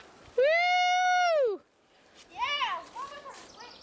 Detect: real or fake real